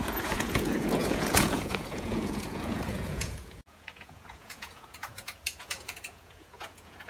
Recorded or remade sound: remade